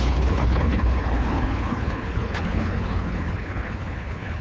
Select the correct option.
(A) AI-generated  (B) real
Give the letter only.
A